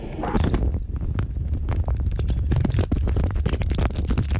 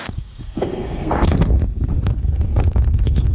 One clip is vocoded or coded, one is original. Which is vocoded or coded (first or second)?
second